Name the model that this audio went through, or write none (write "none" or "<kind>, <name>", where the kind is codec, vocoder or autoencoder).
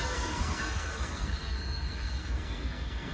codec, SNAC